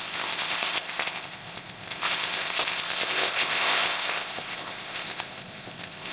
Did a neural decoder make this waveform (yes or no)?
yes